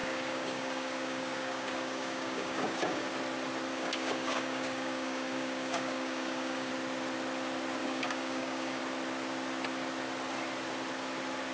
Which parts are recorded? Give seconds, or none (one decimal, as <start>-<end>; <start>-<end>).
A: 3.1-3.7; 6.7-7.8; 8.8-11.5